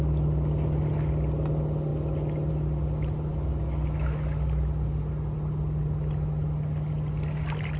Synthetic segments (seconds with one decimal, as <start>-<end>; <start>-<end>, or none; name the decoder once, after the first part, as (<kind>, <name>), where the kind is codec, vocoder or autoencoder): none